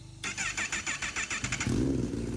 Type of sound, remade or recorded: recorded